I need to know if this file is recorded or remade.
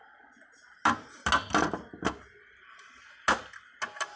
recorded